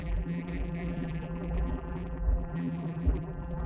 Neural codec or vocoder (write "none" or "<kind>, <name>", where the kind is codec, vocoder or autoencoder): vocoder, BigVGAN v2